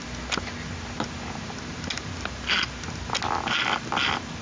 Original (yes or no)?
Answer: yes